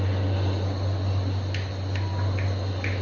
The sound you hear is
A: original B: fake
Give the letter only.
A